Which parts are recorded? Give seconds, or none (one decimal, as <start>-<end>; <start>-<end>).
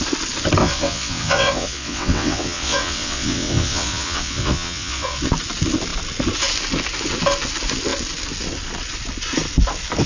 0.0-0.6; 5.2-10.1